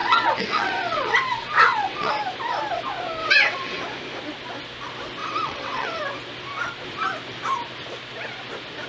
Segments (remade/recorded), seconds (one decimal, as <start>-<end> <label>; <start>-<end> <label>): 0.0-2.1 remade; 2.1-3.2 recorded; 3.2-3.8 remade; 3.8-5.2 recorded; 5.2-6.0 remade; 6.0-8.9 recorded